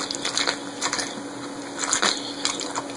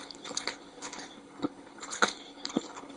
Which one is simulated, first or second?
second